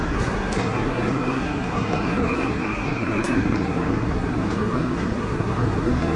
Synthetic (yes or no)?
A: yes